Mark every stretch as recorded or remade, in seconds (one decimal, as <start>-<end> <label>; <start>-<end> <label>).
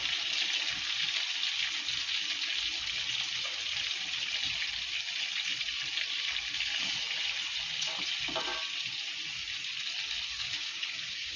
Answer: 0.0-10.3 recorded; 10.3-11.4 remade